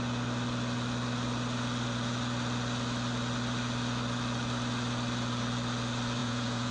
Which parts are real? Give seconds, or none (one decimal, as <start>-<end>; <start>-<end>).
0.0-6.2